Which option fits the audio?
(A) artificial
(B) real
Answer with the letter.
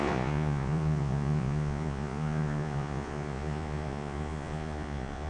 A